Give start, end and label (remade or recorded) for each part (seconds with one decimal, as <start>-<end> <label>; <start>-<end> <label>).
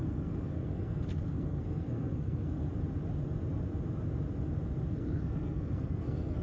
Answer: 0.0-2.7 remade; 2.7-4.9 recorded; 4.9-6.4 remade